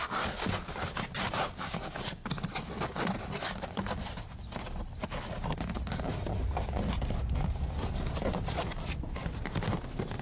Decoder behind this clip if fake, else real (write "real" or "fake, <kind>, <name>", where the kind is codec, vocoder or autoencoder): real